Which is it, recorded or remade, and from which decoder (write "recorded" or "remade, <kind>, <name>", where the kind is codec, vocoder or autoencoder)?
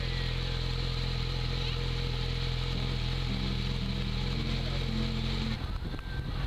recorded